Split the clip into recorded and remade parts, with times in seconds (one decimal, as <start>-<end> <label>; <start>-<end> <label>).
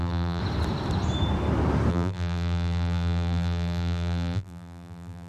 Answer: 0.0-0.4 remade; 0.4-1.9 recorded; 1.9-5.3 remade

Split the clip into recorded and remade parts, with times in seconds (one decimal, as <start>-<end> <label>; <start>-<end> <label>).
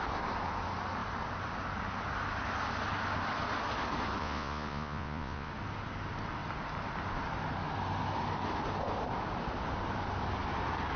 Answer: 0.0-4.2 recorded; 4.2-5.5 remade; 5.5-11.0 recorded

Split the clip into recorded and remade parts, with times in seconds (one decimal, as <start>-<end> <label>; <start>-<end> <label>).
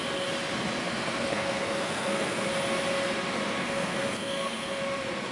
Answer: 0.0-0.8 recorded; 0.8-2.5 remade; 2.5-3.6 recorded; 3.6-4.8 remade; 4.8-5.3 recorded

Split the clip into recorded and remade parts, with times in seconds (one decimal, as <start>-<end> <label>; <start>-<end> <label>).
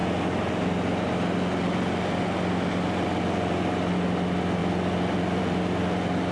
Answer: 0.0-6.3 recorded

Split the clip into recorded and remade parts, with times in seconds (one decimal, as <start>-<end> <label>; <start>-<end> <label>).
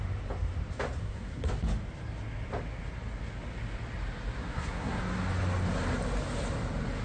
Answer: 0.0-1.0 recorded; 1.0-1.5 remade; 1.5-4.4 recorded; 4.4-5.0 remade; 5.0-7.0 recorded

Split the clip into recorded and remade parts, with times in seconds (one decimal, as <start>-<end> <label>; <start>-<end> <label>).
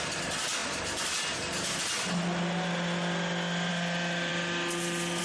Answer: 0.0-5.2 recorded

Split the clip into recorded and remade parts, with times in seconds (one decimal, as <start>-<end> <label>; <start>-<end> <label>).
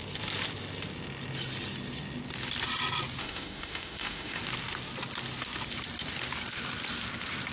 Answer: 0.0-3.2 recorded; 3.2-4.4 remade; 4.4-7.5 recorded